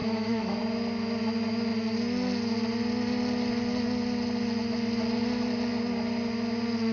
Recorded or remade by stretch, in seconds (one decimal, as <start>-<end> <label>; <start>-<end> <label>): 0.0-0.6 remade; 0.6-6.9 recorded

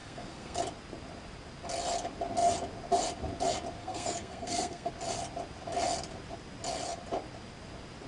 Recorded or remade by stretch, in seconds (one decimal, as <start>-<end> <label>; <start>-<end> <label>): 0.0-0.6 remade; 0.6-3.8 recorded; 3.8-4.9 remade; 4.9-8.1 recorded